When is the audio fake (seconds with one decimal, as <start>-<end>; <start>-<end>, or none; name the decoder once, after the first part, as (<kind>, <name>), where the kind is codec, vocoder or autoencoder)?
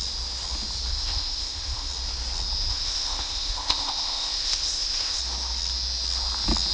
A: 0.9-1.9 (codec, ZipCodec); 2.7-5.2